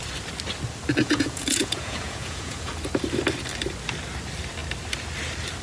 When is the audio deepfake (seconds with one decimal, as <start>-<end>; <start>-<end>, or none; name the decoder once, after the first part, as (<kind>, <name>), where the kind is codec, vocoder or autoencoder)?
1.0-2.7 (vocoder, Vocos)